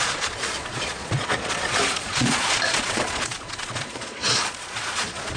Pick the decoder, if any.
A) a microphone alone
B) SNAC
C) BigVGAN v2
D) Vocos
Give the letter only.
D